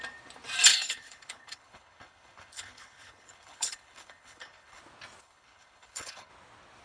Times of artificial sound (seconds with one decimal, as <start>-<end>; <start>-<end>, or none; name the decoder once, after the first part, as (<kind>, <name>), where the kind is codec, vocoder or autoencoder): 0.7-4.8 (codec, HILCodec); 5.2-6.3